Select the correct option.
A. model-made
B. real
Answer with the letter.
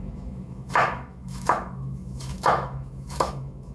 A